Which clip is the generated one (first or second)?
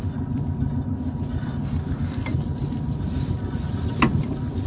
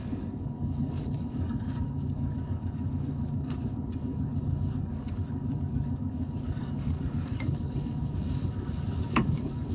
second